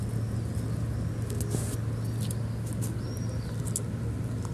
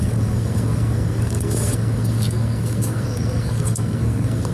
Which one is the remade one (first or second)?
second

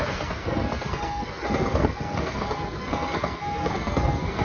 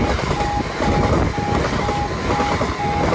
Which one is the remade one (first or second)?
first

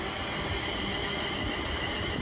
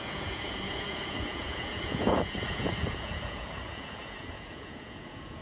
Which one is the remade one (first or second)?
second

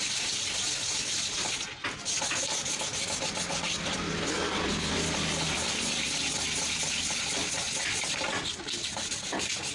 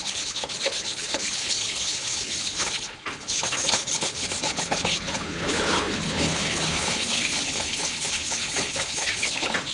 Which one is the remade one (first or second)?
second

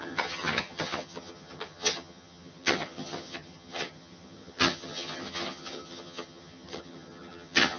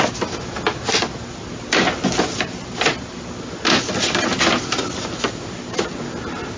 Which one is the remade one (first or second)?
first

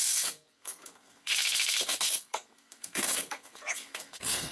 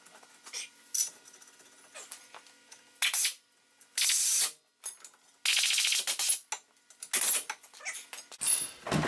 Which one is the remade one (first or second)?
first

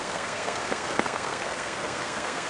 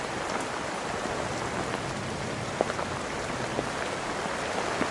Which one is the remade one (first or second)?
first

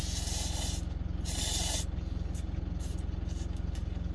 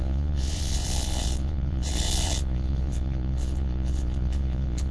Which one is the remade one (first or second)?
second